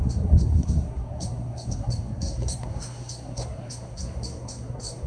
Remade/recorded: remade